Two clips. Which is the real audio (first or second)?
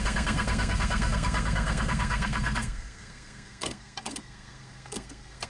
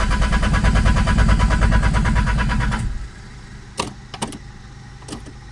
second